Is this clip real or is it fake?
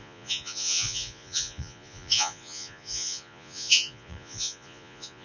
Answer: fake